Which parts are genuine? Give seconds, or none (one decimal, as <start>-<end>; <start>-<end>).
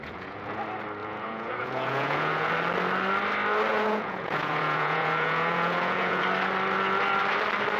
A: 0.6-1.0; 2.5-3.7; 6.2-7.8